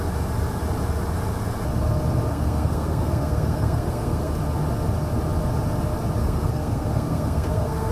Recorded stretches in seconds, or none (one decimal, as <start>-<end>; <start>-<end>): 0.0-2.3; 4.3-6.2